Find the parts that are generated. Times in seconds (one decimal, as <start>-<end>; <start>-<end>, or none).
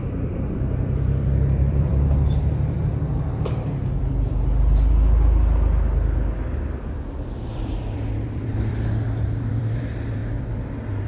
0.0-2.9; 6.8-11.1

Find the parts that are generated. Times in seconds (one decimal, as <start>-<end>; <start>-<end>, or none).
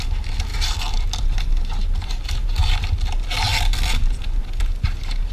0.5-1.4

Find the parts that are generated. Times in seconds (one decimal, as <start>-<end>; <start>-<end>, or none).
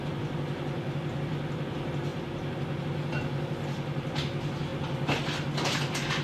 none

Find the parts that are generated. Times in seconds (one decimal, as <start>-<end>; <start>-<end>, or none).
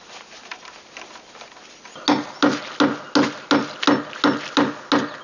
none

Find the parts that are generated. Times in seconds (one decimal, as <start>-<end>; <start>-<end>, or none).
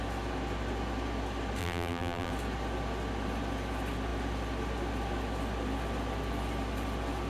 1.6-2.3